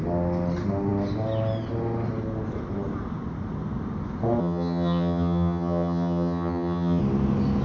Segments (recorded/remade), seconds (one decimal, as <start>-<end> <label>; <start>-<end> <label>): 0.0-4.4 recorded; 4.4-7.0 remade; 7.0-7.6 recorded